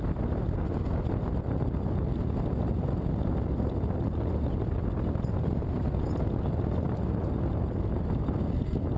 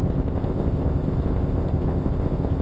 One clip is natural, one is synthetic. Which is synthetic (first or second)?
second